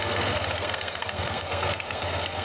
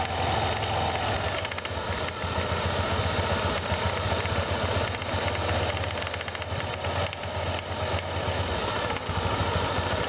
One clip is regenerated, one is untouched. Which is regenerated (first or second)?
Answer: first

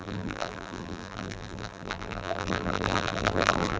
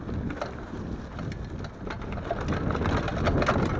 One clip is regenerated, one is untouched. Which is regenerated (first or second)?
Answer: first